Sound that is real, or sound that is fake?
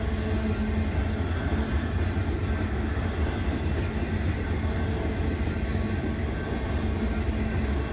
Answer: real